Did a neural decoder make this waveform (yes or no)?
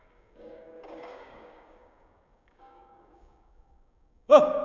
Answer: yes